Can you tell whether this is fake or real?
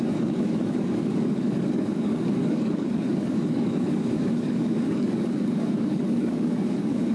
fake